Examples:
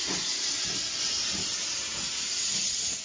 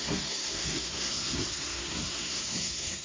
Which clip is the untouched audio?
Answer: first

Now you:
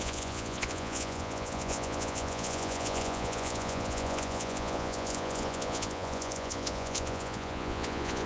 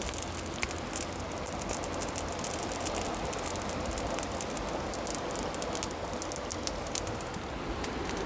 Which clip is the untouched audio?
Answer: second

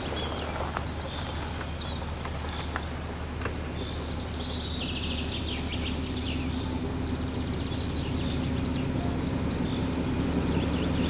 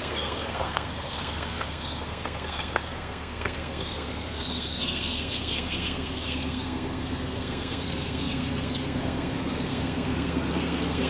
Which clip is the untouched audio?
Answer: first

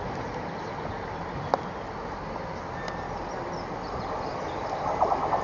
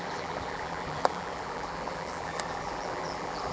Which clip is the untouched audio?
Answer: first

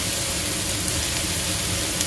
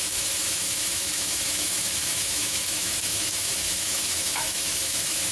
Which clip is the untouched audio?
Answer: first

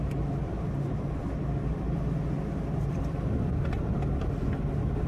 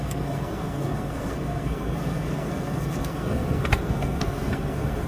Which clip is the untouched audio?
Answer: first